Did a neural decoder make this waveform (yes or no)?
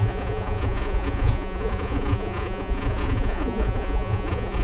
yes